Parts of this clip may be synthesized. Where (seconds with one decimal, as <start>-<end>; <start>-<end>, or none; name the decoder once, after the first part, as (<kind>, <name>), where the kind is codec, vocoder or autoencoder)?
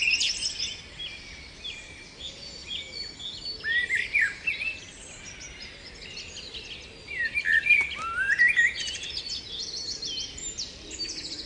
none